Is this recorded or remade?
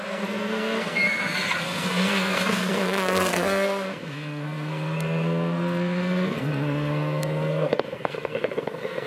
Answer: remade